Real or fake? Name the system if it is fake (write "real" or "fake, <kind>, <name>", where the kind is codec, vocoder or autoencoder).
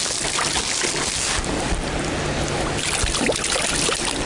real